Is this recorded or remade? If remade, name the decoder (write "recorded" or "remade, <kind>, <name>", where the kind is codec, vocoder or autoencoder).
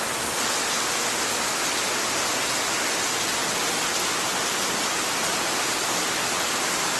recorded